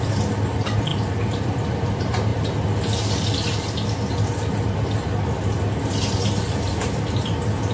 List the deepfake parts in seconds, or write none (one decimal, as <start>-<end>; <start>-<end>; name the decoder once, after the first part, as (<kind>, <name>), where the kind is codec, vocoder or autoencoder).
0.0-2.3 (vocoder, BigVGAN v2); 6.8-7.7